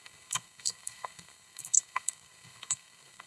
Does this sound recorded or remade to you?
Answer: remade